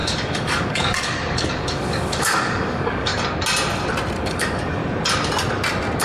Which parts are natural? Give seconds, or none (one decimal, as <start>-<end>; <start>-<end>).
3.1-4.2; 4.8-6.0